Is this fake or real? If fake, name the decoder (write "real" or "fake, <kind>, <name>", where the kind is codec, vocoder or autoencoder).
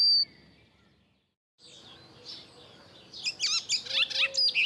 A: real